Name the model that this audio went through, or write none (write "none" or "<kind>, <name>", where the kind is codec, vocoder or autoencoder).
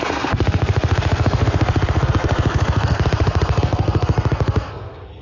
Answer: codec, SNAC